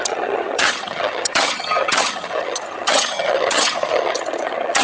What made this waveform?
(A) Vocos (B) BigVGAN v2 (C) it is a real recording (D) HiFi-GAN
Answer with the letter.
D